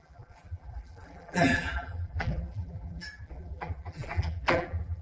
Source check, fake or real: fake